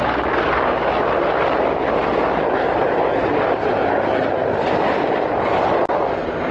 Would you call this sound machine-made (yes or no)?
no